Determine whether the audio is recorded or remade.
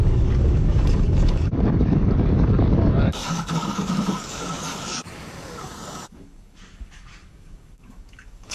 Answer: remade